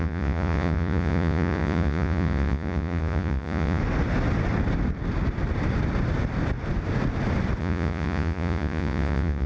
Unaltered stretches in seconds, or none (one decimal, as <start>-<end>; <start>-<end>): 3.8-7.6